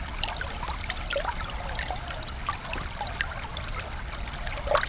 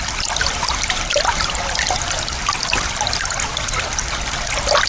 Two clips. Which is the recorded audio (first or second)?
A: first